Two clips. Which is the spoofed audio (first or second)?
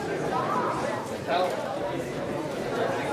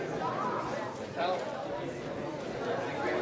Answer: first